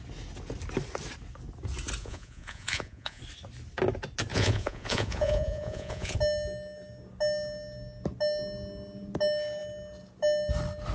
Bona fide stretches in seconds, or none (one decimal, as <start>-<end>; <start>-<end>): 0.0-2.0; 3.2-4.3; 6.2-10.9